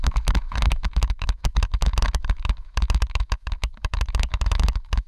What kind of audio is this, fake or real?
fake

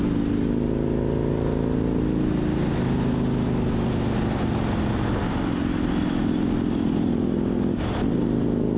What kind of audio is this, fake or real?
real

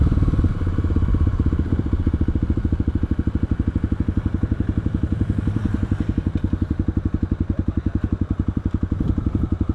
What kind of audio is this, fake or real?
fake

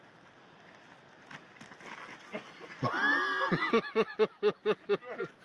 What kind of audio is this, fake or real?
real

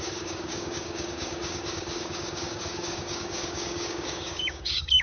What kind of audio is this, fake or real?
fake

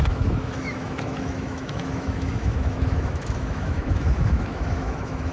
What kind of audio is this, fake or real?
fake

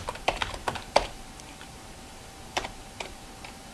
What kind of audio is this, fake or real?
fake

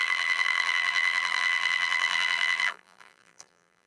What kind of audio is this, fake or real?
fake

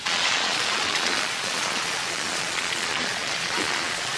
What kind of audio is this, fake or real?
fake